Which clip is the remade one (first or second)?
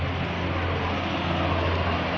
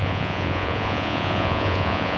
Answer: second